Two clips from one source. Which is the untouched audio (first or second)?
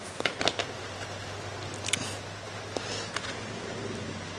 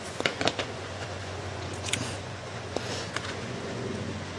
first